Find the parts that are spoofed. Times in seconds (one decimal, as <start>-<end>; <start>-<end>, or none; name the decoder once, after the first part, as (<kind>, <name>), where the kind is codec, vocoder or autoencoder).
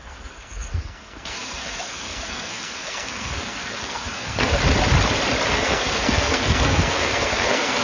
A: 0.0-4.6 (codec, SNAC); 5.5-7.8